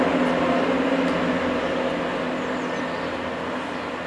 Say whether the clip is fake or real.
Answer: real